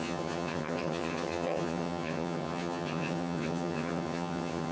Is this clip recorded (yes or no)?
no